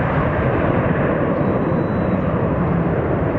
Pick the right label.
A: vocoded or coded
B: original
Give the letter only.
B